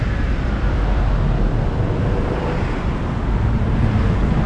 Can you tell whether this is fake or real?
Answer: real